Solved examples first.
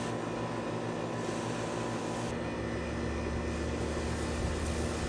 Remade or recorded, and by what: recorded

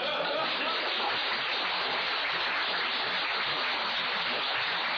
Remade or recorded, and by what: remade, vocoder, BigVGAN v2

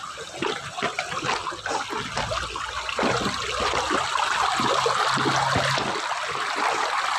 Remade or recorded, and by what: recorded